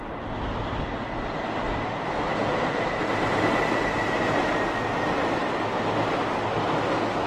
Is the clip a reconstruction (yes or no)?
no